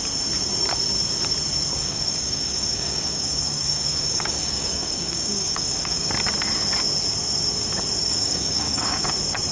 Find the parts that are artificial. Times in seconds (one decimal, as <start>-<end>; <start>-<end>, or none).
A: 1.8-6.1; 8.0-9.1